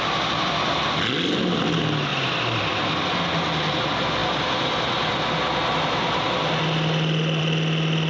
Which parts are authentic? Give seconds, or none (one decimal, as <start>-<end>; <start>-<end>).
0.0-8.1